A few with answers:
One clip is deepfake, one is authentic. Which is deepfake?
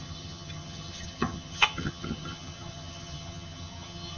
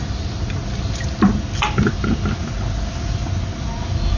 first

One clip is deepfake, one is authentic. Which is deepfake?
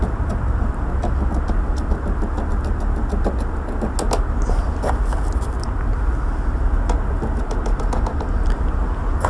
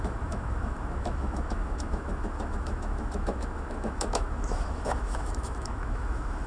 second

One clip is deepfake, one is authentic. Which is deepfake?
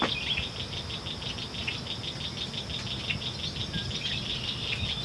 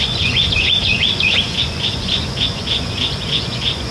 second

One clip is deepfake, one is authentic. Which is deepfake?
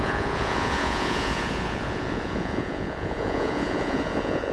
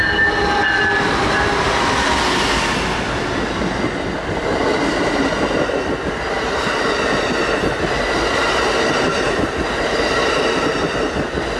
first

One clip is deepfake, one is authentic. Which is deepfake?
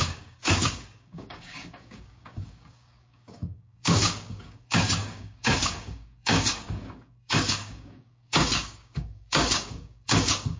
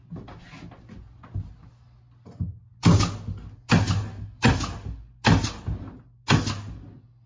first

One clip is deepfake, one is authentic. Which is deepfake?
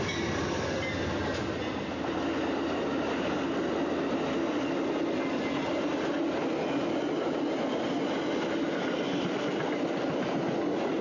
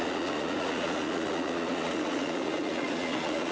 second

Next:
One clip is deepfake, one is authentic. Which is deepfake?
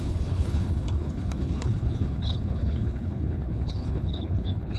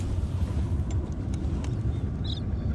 first